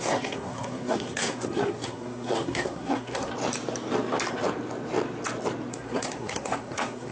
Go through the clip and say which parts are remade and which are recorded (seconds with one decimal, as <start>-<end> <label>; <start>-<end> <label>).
0.0-3.3 remade; 3.3-5.7 recorded; 5.7-7.1 remade